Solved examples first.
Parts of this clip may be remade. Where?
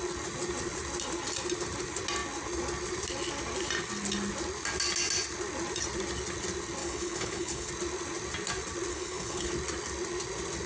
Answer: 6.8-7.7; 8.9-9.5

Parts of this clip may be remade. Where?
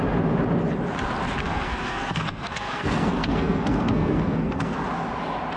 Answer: 1.4-4.8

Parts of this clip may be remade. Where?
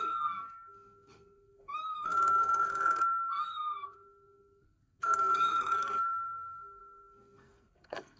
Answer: 0.0-8.2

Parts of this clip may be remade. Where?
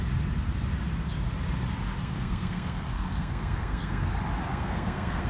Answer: 2.0-4.1; 4.5-5.3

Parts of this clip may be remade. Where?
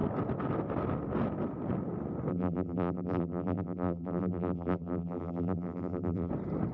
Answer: 2.3-6.3